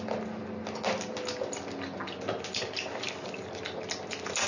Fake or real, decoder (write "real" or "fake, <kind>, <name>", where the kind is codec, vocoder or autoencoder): real